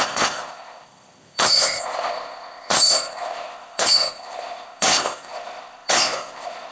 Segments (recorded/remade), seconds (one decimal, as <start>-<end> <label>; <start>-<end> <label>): 0.0-6.7 remade